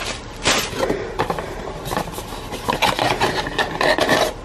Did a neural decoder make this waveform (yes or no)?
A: no